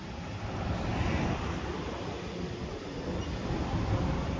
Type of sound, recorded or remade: recorded